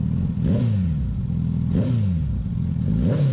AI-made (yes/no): no